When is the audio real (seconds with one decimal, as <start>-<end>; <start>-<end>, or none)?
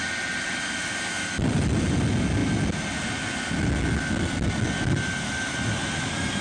0.0-6.4